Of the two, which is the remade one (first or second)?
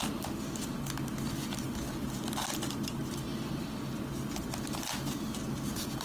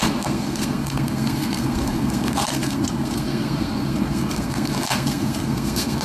second